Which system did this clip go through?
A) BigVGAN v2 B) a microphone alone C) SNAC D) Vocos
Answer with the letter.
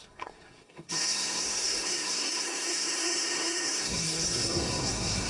C